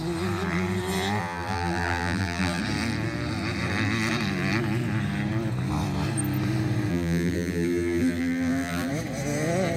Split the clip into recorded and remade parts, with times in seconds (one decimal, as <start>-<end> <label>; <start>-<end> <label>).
0.0-1.2 recorded; 1.2-2.6 remade; 2.6-6.9 recorded; 6.9-8.9 remade; 8.9-9.8 recorded